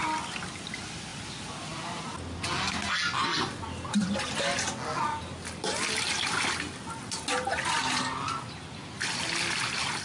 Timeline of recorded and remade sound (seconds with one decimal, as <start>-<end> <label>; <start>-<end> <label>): 0.0-10.0 recorded